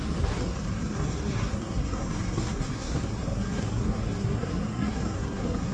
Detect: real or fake fake